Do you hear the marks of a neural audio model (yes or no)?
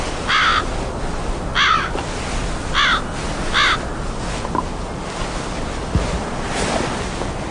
no